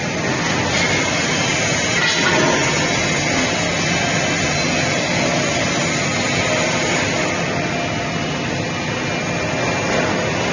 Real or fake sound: real